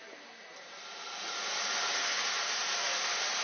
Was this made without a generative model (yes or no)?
yes